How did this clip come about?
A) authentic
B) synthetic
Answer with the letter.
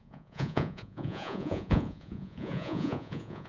B